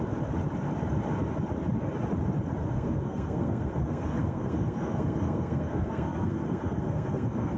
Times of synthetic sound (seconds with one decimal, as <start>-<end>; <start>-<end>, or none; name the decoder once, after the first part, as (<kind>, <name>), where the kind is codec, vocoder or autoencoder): 2.6-7.6 (codec, SNAC)